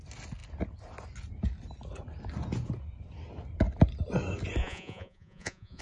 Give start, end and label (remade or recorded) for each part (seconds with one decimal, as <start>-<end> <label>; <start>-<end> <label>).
0.0-4.6 recorded; 4.6-5.8 remade